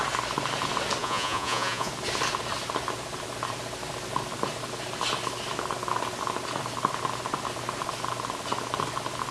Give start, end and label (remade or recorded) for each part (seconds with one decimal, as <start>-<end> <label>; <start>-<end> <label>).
0.0-1.0 recorded; 1.0-1.9 remade; 1.9-9.3 recorded